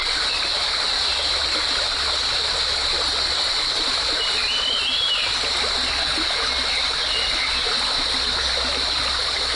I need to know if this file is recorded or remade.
recorded